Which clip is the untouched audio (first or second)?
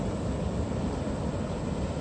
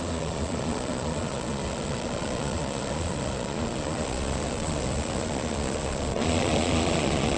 first